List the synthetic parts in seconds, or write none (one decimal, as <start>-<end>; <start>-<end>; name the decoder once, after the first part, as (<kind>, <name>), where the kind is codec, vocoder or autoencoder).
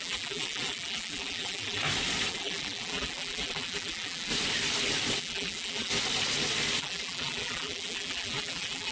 0.0-1.8 (vocoder, BigVGAN v2); 2.3-4.3; 5.2-5.9; 6.8-8.9